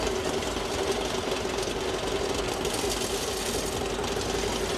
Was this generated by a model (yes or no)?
no